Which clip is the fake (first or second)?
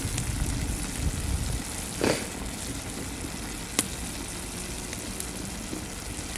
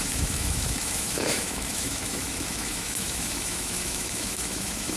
second